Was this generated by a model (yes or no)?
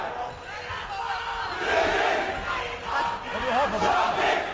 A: no